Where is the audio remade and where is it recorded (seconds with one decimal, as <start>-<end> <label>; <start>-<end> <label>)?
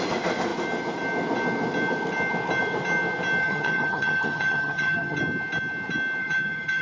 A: 0.0-3.4 recorded; 3.4-5.2 remade; 5.2-6.2 recorded; 6.2-6.8 remade